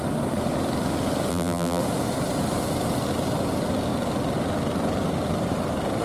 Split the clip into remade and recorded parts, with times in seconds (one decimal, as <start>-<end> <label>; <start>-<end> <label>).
0.0-1.3 recorded; 1.3-1.8 remade; 1.8-6.0 recorded